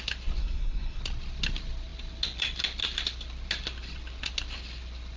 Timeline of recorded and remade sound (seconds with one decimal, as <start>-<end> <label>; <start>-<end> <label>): 0.0-0.4 recorded; 0.4-1.0 remade; 1.0-5.2 recorded